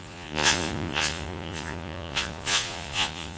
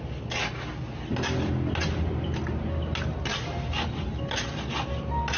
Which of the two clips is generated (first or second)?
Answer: first